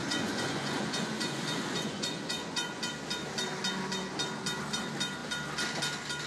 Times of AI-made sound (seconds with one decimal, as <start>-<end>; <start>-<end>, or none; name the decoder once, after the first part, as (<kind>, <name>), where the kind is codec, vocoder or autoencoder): 0.0-2.8 (vocoder, Vocos)